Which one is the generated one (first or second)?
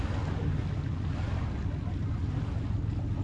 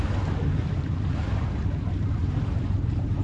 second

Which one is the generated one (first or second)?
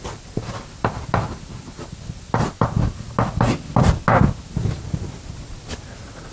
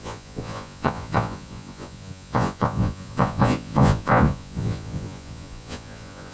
second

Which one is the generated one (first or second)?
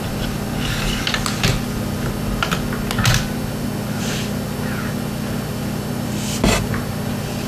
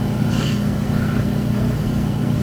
second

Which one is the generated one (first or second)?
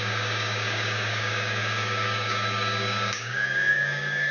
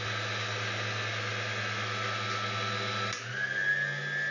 first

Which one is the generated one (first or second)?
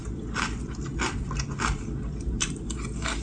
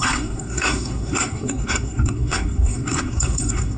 second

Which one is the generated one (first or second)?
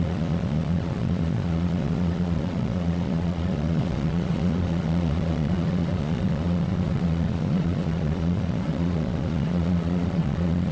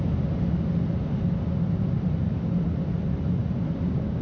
first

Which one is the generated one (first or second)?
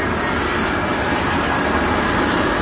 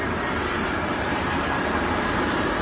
second